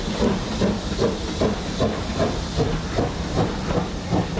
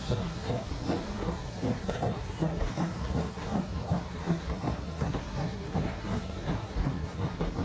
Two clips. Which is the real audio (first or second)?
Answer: first